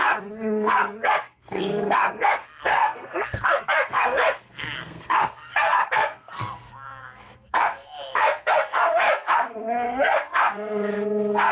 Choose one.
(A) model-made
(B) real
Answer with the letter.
A